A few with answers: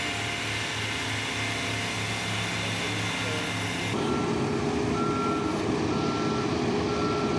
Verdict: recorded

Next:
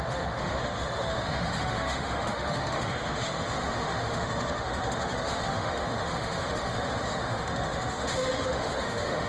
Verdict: remade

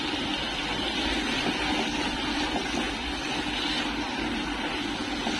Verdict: recorded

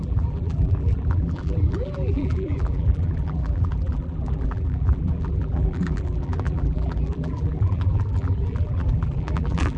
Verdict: remade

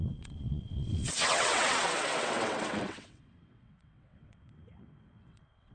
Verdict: remade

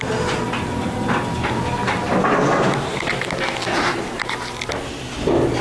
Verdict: recorded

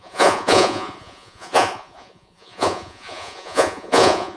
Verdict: remade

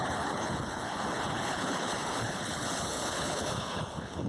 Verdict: remade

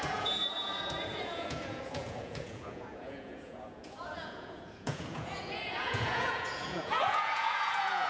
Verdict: remade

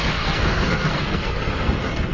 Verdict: remade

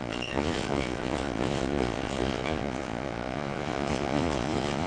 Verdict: remade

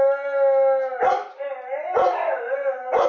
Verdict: recorded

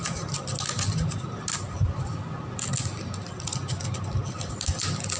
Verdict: recorded